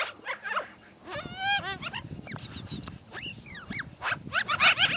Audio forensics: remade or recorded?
recorded